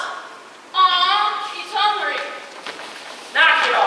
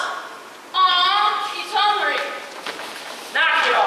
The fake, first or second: first